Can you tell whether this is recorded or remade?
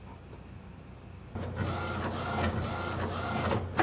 recorded